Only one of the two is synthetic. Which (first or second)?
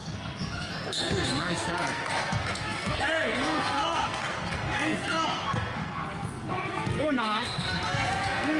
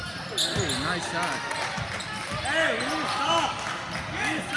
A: first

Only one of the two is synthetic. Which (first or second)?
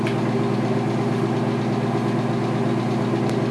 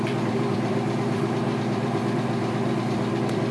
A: second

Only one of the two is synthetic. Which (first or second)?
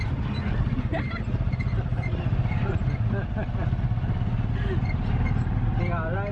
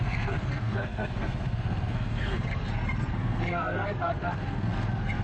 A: second